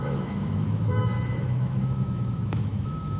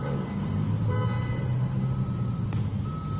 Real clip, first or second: second